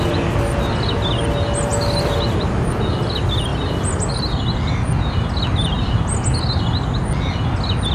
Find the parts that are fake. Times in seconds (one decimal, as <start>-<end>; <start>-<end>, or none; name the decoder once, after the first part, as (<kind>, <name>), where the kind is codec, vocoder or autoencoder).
none